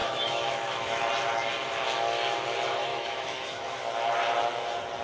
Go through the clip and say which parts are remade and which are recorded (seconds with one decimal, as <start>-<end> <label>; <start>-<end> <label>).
0.0-1.1 remade; 1.1-2.9 recorded; 2.9-3.8 remade; 3.8-5.0 recorded